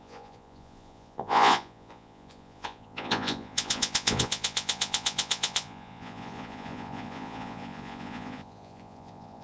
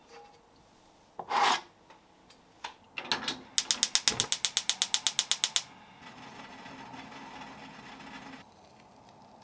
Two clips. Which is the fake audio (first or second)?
first